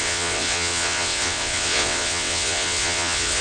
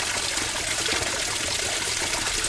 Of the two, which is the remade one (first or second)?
first